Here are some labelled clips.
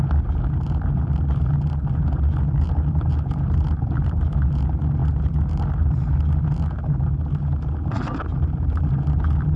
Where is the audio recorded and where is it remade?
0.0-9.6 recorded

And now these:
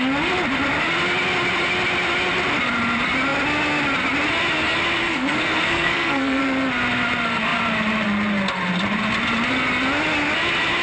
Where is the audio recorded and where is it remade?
0.0-5.0 recorded; 5.0-6.4 remade; 6.4-10.8 recorded

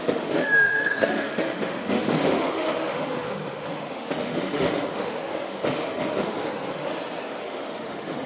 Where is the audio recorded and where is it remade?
0.0-6.9 remade; 6.9-7.4 recorded; 7.4-8.3 remade

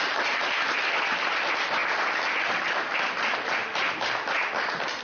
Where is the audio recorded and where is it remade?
0.0-5.0 recorded

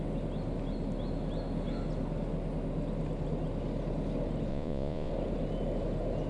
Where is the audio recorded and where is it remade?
0.0-4.5 recorded; 4.5-5.1 remade; 5.1-6.3 recorded

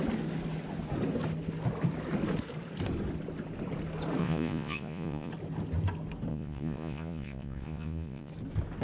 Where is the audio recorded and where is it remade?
0.0-4.2 recorded; 4.2-5.3 remade; 5.3-6.3 recorded; 6.3-8.3 remade; 8.3-8.8 recorded

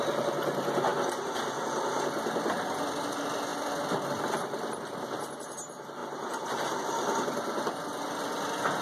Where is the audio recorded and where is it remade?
0.0-6.0 recorded; 6.0-6.8 remade; 6.8-8.8 recorded

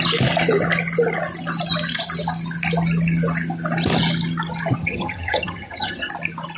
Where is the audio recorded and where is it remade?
0.0-4.8 recorded; 4.8-6.1 remade; 6.1-6.6 recorded